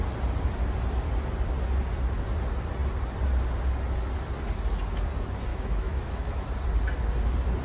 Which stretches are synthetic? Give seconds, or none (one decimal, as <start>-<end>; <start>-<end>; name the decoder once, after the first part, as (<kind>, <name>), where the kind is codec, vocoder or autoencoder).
5.5-6.5 (autoencoder, DAC-VAE)